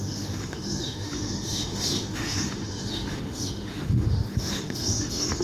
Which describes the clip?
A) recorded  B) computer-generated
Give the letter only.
B